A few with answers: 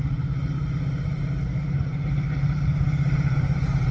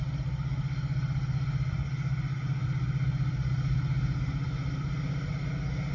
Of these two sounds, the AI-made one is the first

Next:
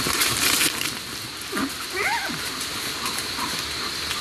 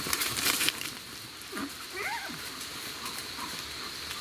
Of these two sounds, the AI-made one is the second